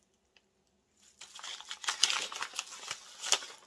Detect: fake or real real